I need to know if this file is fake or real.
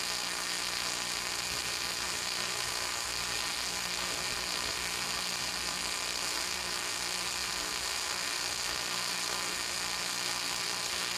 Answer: fake